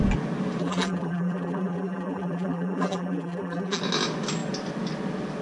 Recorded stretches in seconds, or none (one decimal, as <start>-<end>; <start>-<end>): 0.0-0.6; 3.8-5.4